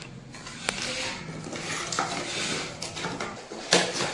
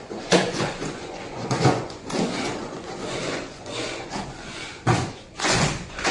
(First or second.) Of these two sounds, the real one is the first